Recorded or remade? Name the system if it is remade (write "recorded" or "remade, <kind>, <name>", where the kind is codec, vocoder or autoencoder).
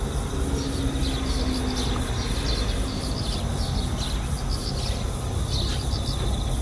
recorded